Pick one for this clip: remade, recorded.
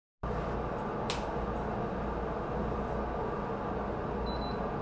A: recorded